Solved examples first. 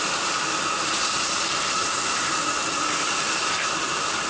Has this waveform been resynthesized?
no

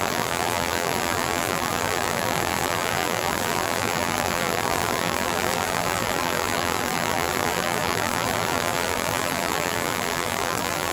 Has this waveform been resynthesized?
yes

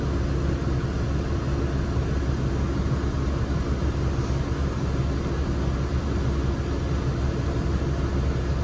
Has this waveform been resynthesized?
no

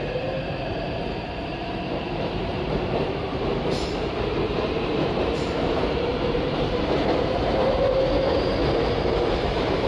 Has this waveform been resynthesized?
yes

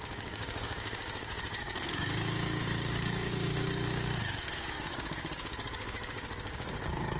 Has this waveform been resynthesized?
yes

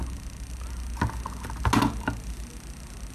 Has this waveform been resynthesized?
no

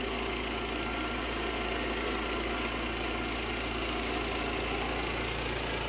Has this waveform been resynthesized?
no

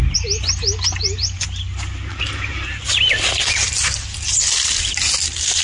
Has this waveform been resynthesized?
no